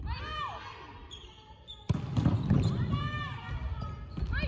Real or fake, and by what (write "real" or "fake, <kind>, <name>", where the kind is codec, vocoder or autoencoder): real